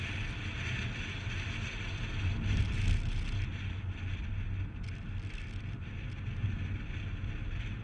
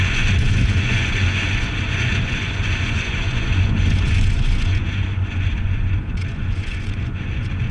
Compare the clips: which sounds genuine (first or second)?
first